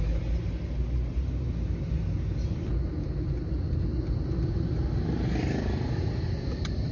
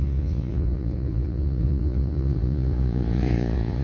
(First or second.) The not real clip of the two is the second